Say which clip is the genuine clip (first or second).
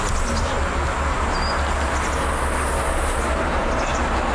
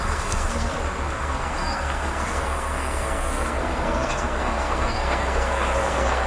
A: first